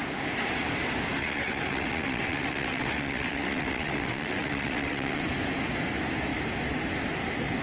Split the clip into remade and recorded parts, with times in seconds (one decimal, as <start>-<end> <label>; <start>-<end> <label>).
0.0-1.2 recorded; 1.2-5.2 remade; 5.2-7.6 recorded